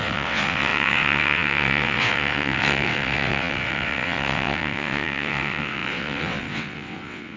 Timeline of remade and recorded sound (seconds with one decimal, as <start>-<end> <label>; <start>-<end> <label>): 0.0-7.4 remade